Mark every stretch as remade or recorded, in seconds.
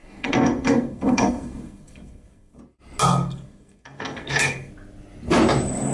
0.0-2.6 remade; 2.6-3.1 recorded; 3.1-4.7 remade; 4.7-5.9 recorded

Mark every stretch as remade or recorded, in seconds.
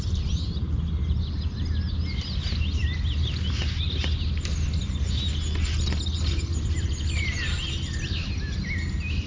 0.0-9.3 recorded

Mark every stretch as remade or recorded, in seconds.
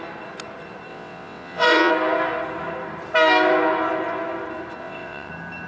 0.0-0.9 recorded; 0.9-1.9 remade; 1.9-4.8 recorded; 4.8-5.3 remade; 5.3-5.7 recorded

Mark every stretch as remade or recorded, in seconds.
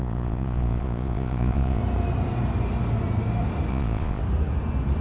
0.0-1.8 remade; 1.8-3.7 recorded; 3.7-4.2 remade; 4.2-5.0 recorded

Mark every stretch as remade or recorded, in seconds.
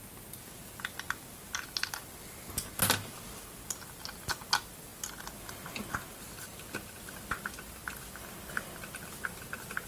0.0-9.9 recorded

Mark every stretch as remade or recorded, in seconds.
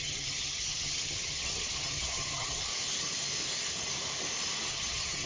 0.0-2.7 remade; 2.7-4.7 recorded; 4.7-5.3 remade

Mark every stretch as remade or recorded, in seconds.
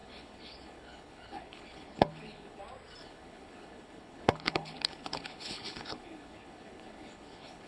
0.0-2.6 remade; 2.6-3.0 recorded; 3.0-7.7 remade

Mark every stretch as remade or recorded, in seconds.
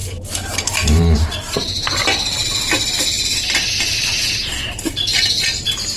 0.0-2.5 remade; 2.5-6.0 recorded